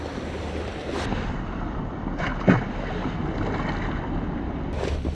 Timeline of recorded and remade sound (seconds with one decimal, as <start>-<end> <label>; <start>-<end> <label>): 0.0-0.8 recorded; 0.8-2.8 remade; 2.8-5.1 recorded

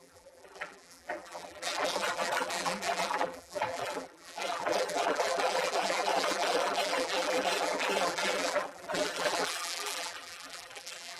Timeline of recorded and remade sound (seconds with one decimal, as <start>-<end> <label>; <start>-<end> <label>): 0.0-11.2 remade

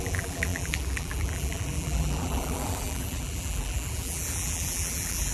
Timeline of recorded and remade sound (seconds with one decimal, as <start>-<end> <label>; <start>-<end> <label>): 0.0-5.3 remade

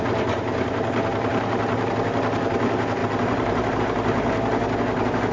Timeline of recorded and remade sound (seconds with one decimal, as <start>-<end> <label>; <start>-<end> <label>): 0.0-1.3 recorded; 1.3-2.0 remade; 2.0-3.0 recorded; 3.0-3.8 remade; 3.8-5.3 recorded

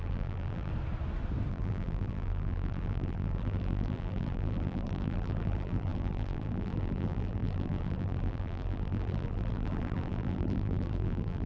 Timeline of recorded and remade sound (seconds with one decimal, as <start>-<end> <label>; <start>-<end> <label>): 0.0-0.7 remade; 0.7-1.5 recorded; 1.5-11.5 remade

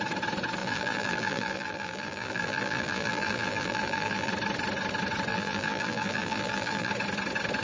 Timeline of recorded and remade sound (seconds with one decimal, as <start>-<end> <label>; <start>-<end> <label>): 0.0-0.6 recorded; 0.6-4.3 remade; 4.3-5.3 recorded; 5.3-6.9 remade; 6.9-7.6 recorded